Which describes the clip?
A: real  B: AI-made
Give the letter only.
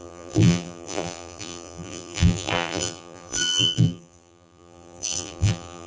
B